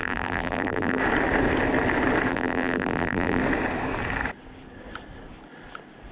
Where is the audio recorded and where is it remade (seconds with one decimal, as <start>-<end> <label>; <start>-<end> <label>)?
0.0-1.0 remade; 1.0-2.3 recorded; 2.3-3.4 remade; 3.4-6.1 recorded